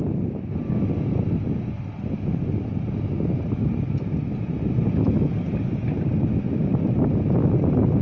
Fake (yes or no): no